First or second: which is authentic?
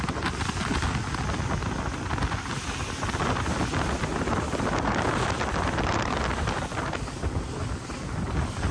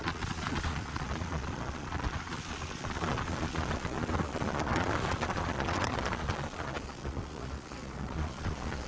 first